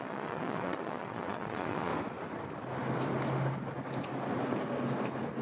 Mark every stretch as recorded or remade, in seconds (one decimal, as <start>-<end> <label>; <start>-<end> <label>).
0.0-1.9 remade; 1.9-5.4 recorded